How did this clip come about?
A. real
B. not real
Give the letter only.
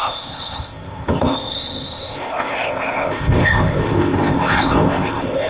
B